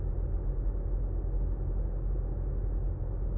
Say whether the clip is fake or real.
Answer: real